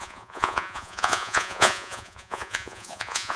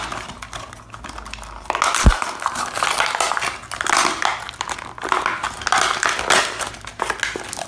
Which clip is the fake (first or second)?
first